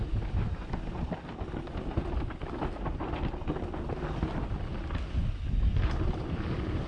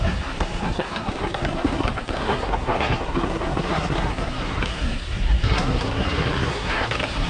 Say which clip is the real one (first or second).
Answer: first